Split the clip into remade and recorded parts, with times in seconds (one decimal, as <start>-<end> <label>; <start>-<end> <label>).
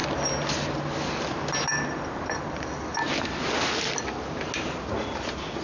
0.0-5.6 recorded